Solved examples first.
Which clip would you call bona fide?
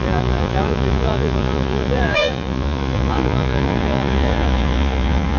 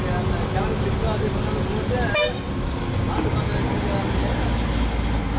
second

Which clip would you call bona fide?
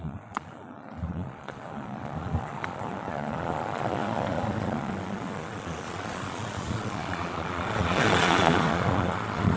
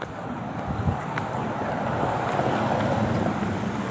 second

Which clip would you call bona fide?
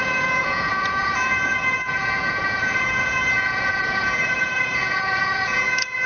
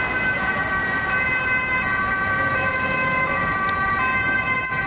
second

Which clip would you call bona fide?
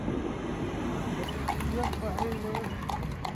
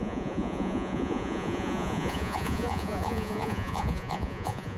first